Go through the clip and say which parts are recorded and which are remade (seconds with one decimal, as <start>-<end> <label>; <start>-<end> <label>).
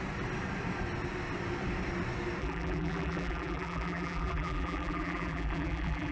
0.0-2.4 recorded; 2.4-6.1 remade